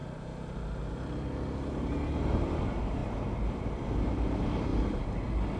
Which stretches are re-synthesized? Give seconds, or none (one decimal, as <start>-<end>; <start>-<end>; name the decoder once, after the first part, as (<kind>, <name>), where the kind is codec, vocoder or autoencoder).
2.1-4.7 (vocoder, BigVGAN v2)